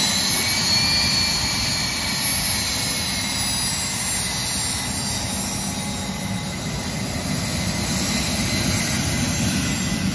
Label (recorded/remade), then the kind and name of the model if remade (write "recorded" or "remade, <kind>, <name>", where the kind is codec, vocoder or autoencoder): recorded